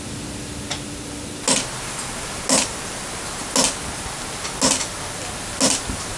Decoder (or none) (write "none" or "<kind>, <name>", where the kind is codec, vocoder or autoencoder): none